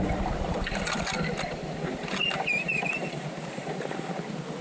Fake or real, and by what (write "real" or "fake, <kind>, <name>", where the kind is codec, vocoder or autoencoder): fake, vocoder, BigVGAN v2